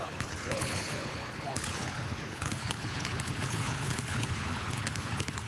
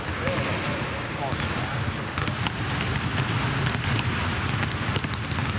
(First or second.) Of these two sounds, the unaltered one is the second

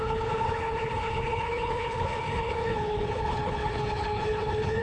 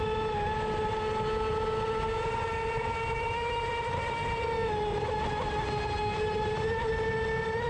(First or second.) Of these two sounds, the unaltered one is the second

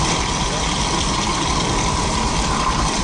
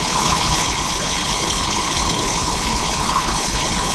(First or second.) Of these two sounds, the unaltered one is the first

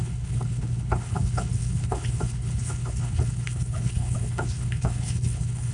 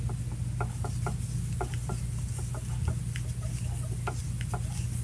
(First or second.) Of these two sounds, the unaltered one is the second